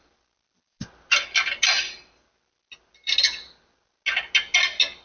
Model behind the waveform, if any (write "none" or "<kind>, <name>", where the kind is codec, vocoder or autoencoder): none